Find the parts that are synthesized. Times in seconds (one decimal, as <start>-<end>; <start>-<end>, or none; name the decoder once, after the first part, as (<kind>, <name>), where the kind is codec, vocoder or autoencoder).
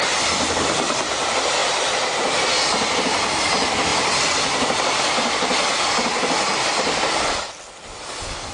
none